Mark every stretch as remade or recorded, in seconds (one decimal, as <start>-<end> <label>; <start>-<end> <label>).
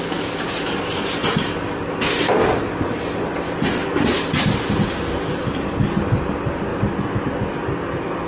0.0-8.3 recorded